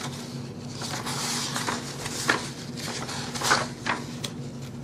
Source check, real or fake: real